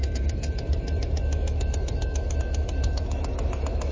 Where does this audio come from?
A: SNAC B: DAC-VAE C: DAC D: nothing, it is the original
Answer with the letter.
B